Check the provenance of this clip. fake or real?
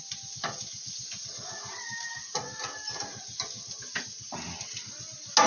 real